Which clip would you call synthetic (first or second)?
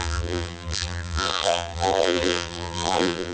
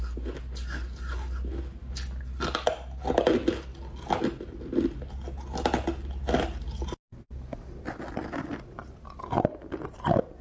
first